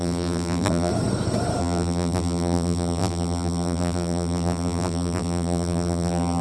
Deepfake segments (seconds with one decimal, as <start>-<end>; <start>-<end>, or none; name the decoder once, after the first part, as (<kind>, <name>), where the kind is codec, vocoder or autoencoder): 0.0-0.9 (vocoder, BigVGAN v2); 1.6-6.4

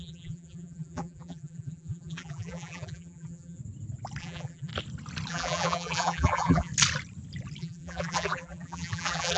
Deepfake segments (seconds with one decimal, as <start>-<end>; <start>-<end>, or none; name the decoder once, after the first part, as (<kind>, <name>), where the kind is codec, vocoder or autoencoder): 0.0-3.6 (vocoder, BigVGAN v2); 4.2-4.7; 5.3-6.7; 7.6-9.4

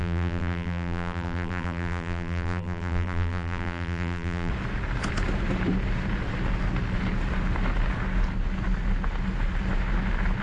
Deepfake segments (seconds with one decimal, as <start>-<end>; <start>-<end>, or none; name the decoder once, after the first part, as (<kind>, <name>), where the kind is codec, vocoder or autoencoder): 0.0-4.5 (vocoder, BigVGAN v2)

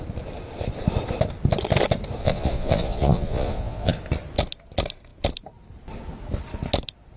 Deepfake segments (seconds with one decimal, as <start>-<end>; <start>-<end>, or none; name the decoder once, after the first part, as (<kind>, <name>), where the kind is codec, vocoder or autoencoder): 2.2-3.9 (vocoder, Vocos)

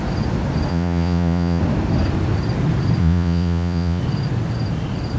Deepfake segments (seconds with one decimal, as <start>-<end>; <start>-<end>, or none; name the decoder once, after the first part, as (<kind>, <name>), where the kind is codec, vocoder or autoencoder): 0.7-1.6 (vocoder, Vocos); 3.0-4.0

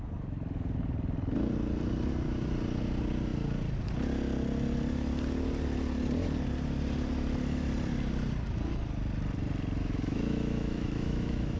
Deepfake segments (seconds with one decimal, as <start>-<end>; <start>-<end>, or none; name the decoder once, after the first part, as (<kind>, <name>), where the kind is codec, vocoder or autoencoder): 9.8-11.6 (autoencoder, DAC-VAE)